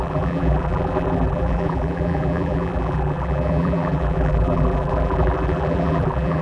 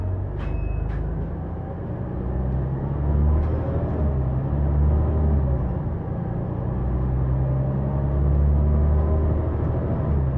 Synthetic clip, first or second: first